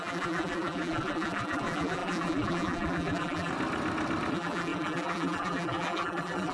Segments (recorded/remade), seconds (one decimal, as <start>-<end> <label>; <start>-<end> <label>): 0.0-3.5 remade; 3.5-4.3 recorded; 4.3-6.5 remade